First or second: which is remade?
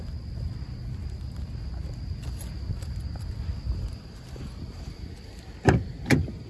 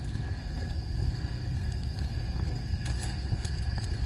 second